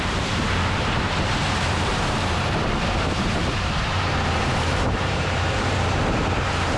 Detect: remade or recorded remade